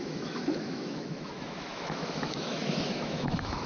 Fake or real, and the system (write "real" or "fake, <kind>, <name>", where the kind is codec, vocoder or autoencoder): fake, autoencoder, DAC-VAE